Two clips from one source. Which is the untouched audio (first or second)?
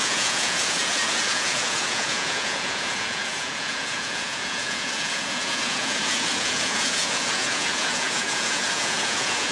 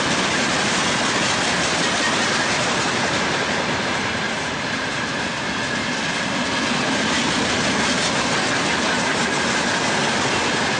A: second